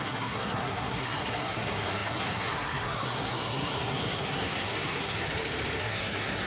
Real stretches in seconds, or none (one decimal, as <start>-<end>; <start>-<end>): 5.3-5.8

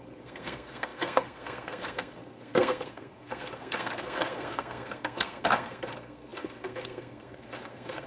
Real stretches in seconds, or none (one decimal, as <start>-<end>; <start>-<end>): none

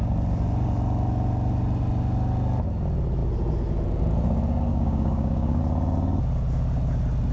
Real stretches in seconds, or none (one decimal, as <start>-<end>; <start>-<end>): 0.0-4.7; 5.6-7.3

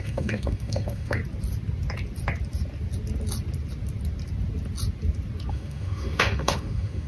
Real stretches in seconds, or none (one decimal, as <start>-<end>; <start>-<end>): 1.2-5.5

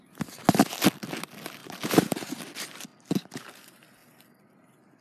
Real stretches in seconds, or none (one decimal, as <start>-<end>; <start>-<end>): 0.0-1.6; 2.4-5.0

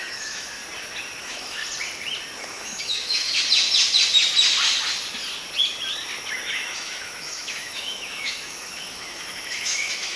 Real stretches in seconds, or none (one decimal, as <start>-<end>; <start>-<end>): 0.6-1.2; 1.6-2.4; 3.4-6.5

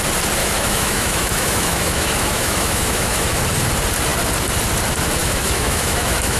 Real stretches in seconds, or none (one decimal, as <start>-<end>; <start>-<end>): 0.0-0.4; 3.4-5.2

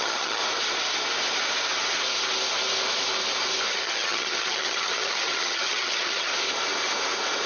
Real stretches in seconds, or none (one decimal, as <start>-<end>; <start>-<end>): 0.4-3.7; 6.3-7.5